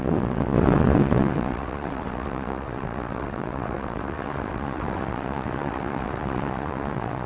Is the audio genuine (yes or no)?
no